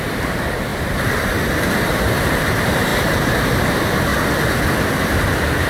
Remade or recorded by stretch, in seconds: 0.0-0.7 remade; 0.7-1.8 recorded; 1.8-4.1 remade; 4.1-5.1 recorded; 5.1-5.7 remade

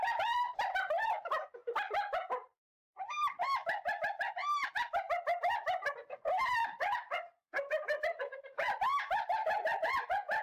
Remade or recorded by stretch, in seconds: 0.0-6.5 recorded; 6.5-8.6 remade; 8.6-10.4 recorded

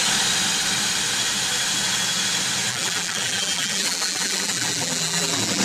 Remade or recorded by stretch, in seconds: 0.0-2.7 recorded; 2.7-5.6 remade

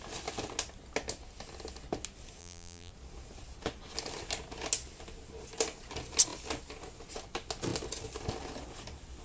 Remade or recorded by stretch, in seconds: 0.0-2.4 recorded; 2.4-2.9 remade; 2.9-9.2 recorded

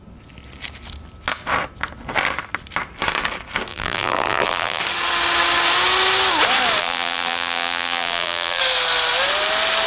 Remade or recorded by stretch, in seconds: 0.0-3.7 recorded; 3.7-4.8 remade; 4.8-6.8 recorded; 6.8-8.6 remade; 8.6-9.9 recorded

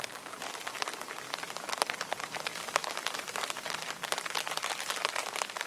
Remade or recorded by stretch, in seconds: 0.0-5.7 recorded

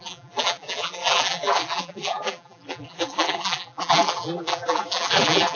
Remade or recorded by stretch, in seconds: 0.0-5.6 remade